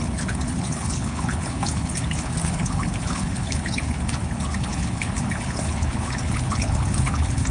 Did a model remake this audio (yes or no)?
yes